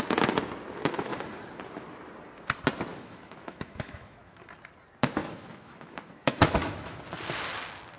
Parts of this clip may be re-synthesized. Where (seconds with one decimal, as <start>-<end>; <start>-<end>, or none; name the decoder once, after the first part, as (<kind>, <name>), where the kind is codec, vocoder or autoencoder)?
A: 2.9-4.5 (autoencoder, DAC-VAE); 5.2-7.0